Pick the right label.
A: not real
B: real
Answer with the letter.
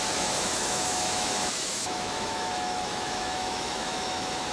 A